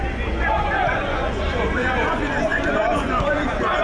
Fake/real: fake